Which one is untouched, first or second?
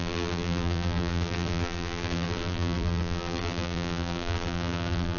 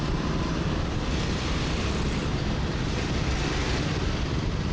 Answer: second